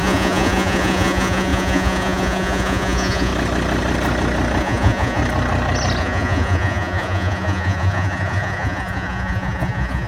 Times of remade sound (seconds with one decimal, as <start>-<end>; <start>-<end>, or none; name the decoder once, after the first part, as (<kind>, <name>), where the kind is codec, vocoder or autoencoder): 0.0-3.3 (vocoder, Vocos); 4.6-5.2; 6.0-10.1